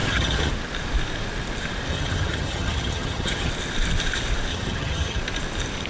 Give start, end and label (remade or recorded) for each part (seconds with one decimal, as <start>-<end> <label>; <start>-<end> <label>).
0.0-0.5 remade; 0.5-1.9 recorded; 1.9-3.5 remade; 3.5-4.5 recorded; 4.5-5.2 remade; 5.2-5.9 recorded